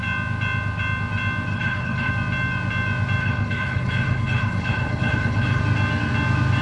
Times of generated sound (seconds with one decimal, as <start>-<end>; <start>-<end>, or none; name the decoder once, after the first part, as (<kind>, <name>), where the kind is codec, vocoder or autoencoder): 1.5-2.1 (codec, HILCodec); 3.2-5.6